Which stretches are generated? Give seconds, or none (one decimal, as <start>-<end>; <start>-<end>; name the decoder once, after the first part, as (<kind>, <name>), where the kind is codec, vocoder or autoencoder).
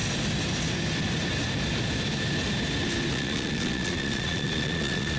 3.1-5.2 (vocoder, Vocos)